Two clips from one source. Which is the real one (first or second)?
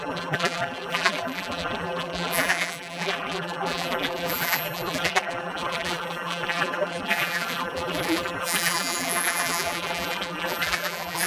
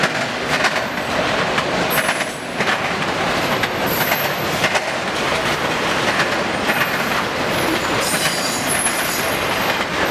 second